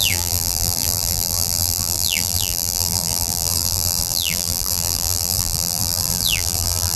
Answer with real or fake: fake